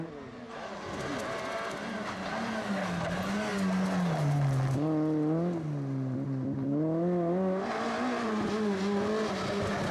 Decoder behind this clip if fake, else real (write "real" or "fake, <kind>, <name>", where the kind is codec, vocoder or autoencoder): real